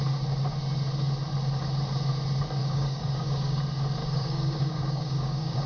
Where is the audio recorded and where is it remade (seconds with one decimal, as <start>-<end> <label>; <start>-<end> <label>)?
0.0-2.6 recorded; 2.6-3.6 remade; 3.6-4.0 recorded; 4.0-5.7 remade